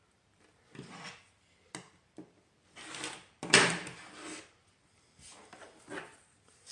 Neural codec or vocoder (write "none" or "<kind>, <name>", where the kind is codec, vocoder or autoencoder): none